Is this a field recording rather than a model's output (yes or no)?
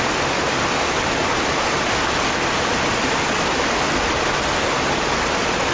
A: yes